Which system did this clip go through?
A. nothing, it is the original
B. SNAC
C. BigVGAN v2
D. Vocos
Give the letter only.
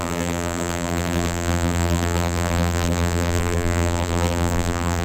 C